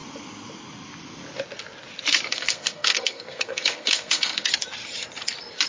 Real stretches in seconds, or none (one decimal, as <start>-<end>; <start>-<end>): 0.0-2.3; 4.5-5.7